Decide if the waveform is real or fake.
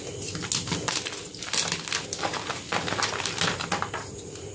real